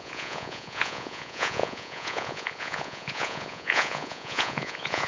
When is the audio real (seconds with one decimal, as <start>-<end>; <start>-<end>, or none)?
none

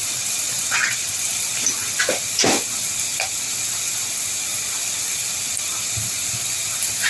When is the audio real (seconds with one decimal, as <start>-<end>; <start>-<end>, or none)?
1.5-7.1

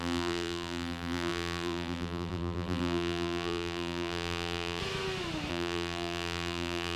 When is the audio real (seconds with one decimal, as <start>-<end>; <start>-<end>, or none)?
4.8-5.5

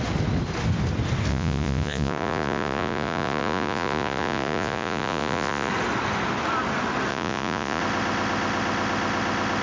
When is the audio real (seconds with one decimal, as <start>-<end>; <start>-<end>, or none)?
0.0-1.3; 5.7-7.1; 7.8-9.6

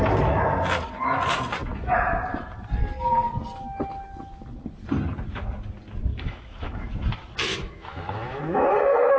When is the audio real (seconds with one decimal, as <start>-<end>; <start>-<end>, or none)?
0.0-6.1; 6.9-7.5; 8.7-9.2

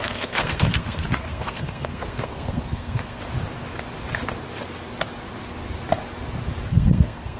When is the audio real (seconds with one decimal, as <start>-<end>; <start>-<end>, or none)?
3.2-6.7